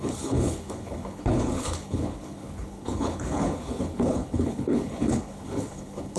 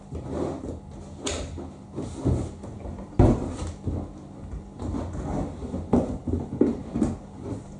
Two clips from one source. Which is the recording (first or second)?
second